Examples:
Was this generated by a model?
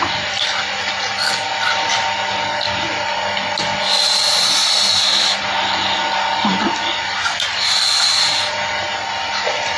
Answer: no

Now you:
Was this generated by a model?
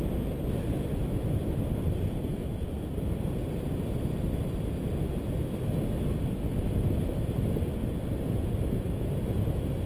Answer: no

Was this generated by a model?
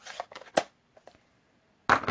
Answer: no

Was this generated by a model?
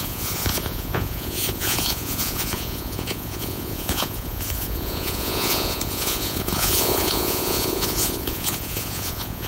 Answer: yes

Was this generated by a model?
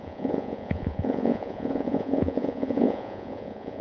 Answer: yes